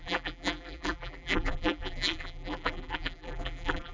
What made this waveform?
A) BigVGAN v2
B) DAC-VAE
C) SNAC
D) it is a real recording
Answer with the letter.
A